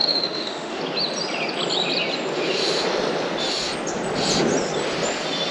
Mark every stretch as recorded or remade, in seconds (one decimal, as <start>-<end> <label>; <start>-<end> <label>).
0.0-0.8 remade; 0.8-5.5 recorded